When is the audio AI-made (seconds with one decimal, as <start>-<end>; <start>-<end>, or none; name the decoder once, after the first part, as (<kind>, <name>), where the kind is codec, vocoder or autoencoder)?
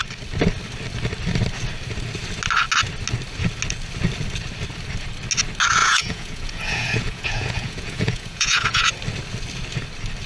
5.8-8.9 (vocoder, Vocos)